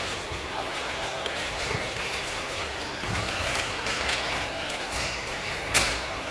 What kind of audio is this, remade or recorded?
remade